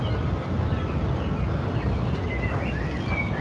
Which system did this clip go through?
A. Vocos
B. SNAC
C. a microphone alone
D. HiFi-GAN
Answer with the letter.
C